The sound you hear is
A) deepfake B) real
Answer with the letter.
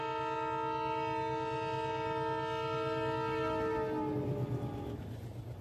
B